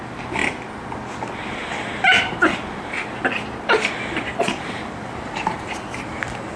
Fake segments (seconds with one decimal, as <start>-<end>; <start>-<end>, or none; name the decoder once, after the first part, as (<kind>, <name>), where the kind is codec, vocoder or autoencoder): none